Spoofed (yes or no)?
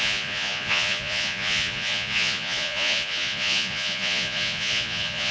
yes